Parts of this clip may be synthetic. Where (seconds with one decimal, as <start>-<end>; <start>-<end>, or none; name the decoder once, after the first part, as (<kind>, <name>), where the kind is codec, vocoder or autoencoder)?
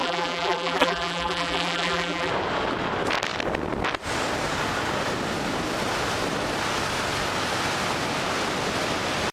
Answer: 0.0-2.3 (vocoder, BigVGAN v2)